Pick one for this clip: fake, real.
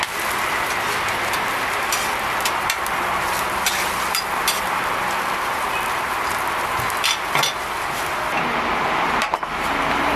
real